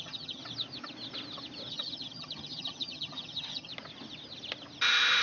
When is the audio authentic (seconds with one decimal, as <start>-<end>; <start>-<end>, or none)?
0.4-1.7; 3.7-5.2